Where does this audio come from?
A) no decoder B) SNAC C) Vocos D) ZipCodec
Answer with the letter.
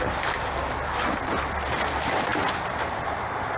A